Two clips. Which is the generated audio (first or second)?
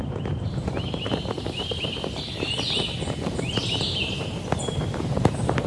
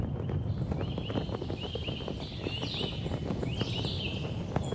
first